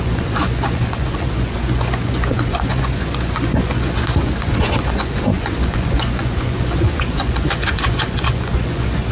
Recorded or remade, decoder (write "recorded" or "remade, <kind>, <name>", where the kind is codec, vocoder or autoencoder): remade, vocoder, Vocos